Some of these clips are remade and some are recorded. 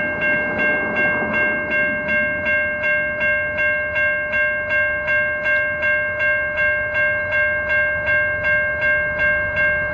recorded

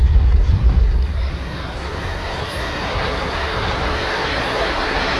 remade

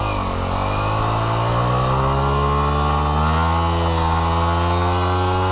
recorded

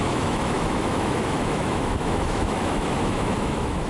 remade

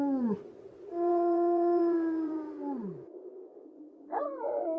remade